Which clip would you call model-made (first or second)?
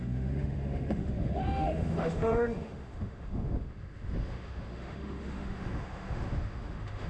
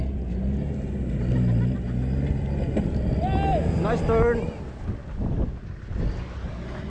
first